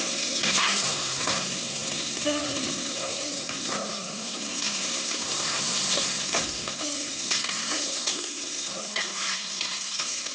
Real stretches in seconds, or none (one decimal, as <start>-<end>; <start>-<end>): none